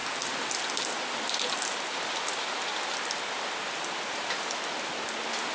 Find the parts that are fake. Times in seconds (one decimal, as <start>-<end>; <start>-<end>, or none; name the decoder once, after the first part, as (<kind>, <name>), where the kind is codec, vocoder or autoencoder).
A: none